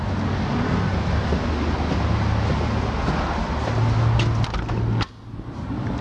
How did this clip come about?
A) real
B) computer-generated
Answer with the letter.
A